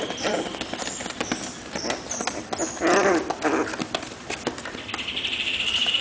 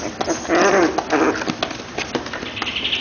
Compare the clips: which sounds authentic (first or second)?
second